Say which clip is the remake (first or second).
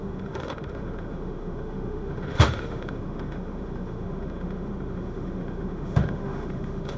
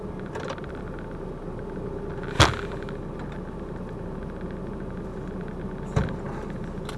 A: first